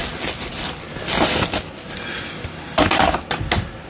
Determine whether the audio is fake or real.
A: real